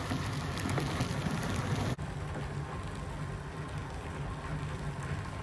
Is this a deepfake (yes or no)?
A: no